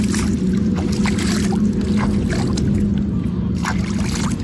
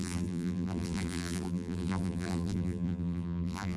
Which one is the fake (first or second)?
second